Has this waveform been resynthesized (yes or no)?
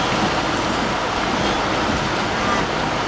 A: no